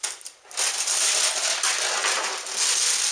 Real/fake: real